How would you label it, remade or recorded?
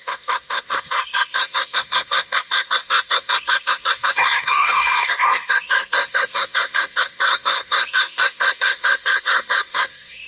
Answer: remade